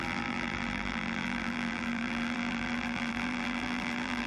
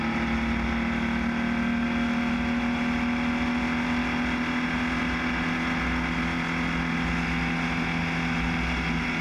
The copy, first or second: first